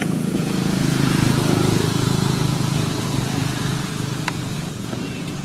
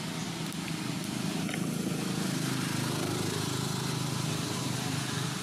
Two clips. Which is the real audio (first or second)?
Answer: second